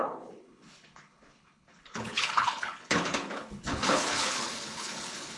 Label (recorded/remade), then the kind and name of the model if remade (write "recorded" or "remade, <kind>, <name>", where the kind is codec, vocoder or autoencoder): remade, codec, HILCodec